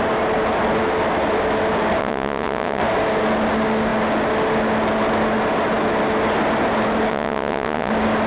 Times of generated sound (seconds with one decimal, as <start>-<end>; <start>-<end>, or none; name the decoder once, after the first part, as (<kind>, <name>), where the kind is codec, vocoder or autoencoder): 2.0-2.8 (vocoder, WaveNeXt); 7.1-7.9